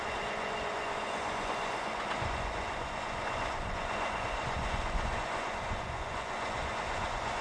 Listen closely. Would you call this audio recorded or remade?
remade